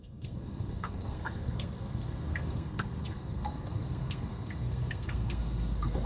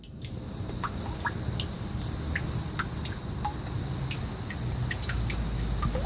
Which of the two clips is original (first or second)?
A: second